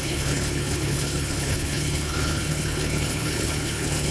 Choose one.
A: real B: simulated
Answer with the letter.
B